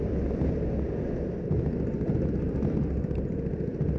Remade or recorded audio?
recorded